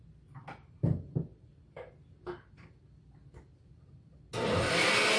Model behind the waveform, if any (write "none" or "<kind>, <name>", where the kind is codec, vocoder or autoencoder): none